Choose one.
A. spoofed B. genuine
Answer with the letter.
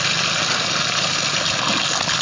B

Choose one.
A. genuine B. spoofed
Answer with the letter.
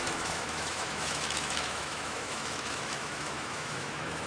B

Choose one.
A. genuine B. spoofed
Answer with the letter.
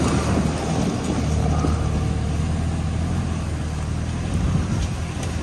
A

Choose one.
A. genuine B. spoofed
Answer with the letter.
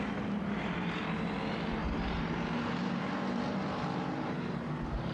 B